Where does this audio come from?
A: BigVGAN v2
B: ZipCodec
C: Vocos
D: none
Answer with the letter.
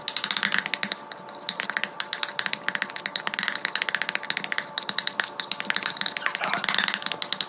D